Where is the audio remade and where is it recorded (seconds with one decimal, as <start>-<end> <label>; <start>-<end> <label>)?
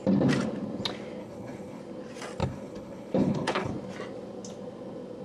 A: 0.0-1.2 recorded; 1.2-1.8 remade; 1.8-2.4 recorded; 2.4-3.7 remade; 3.7-5.2 recorded